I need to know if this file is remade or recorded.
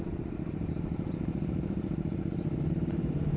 remade